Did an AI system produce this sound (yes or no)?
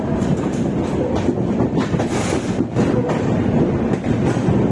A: no